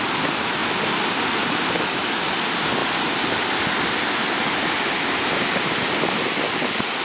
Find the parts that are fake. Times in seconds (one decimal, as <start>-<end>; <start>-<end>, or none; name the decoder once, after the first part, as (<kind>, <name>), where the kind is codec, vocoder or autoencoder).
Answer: 0.0-0.6 (vocoder, BigVGAN v2); 1.1-2.8; 5.4-7.0

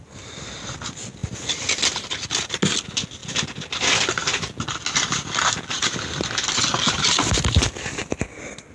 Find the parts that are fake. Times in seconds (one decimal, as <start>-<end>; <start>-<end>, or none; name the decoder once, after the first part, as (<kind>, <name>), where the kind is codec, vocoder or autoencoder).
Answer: 1.2-2.1 (vocoder, BigVGAN v2); 3.2-8.2

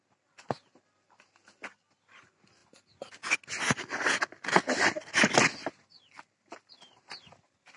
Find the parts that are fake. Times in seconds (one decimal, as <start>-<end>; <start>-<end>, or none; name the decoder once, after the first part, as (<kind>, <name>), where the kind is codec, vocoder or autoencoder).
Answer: 0.0-2.6 (vocoder, BigVGAN v2); 5.7-7.8

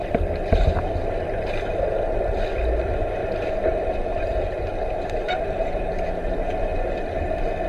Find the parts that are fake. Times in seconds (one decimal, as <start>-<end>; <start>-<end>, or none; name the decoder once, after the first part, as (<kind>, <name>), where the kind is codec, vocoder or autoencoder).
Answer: 3.2-6.1 (vocoder, BigVGAN v2)

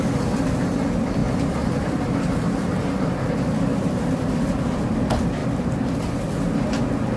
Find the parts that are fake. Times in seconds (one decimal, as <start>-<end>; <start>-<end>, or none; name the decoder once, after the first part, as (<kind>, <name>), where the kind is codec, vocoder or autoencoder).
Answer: 3.7-5.0 (vocoder, BigVGAN v2)

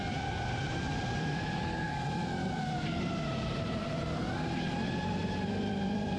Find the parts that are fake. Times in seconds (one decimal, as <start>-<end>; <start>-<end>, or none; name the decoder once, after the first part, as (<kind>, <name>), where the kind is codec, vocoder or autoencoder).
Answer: 0.0-5.2 (vocoder, BigVGAN v2); 5.8-6.2

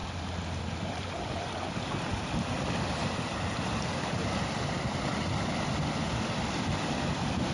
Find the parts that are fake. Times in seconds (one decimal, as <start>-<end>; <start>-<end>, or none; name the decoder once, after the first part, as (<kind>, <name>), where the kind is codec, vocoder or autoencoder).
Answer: 0.0-7.5 (vocoder, BigVGAN v2)

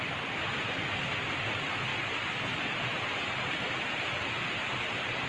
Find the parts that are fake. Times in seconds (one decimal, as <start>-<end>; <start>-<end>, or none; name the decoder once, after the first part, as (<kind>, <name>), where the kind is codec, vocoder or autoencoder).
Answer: none